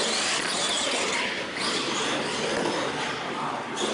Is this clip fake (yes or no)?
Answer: no